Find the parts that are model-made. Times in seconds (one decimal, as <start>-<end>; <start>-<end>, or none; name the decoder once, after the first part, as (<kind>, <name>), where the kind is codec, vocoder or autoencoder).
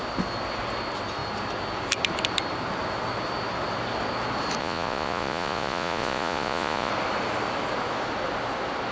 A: 4.6-6.9 (vocoder, Vocos)